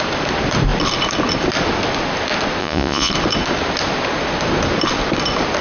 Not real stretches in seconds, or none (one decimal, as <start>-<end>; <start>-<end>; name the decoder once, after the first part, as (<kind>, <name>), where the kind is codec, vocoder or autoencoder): 2.6-3.1 (vocoder, Vocos)